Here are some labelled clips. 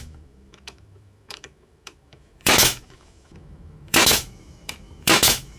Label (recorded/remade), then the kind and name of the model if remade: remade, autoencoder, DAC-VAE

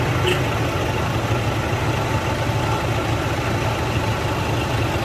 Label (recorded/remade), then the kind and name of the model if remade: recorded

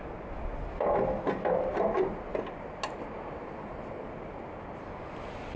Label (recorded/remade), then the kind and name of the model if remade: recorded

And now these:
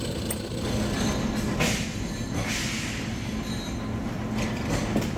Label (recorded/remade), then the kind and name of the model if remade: recorded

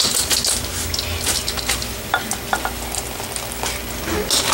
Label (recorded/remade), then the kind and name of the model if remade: recorded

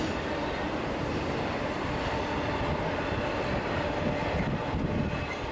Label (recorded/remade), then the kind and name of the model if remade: recorded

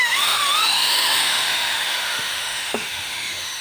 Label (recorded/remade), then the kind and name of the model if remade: remade, autoencoder, DAC-VAE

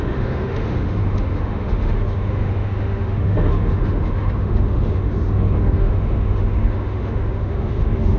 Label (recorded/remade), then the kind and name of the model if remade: remade, autoencoder, DAC-VAE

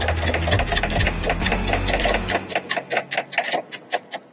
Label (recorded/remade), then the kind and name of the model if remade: recorded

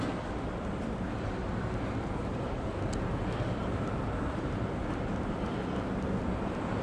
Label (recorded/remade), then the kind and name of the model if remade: recorded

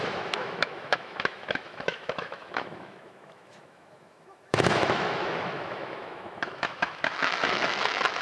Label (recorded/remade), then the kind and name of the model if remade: remade, autoencoder, DAC-VAE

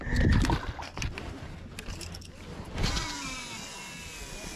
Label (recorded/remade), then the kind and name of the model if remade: recorded